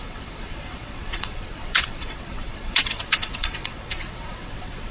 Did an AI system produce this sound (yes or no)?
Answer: yes